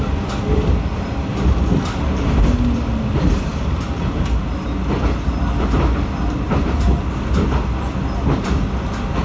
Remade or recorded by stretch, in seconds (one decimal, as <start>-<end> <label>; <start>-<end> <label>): 0.0-9.2 recorded